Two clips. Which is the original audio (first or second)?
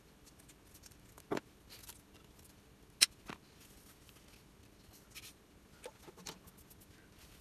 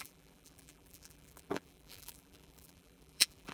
first